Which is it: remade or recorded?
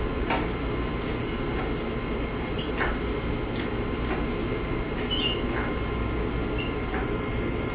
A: recorded